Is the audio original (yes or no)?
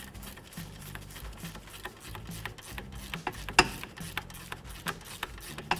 yes